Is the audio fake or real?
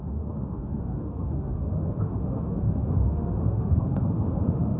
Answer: fake